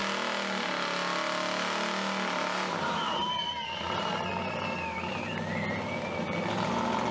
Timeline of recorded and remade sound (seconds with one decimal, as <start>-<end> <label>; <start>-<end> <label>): 0.0-7.1 recorded